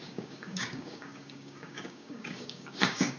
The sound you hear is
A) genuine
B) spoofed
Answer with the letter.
B